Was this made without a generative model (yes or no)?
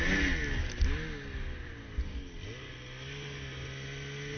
yes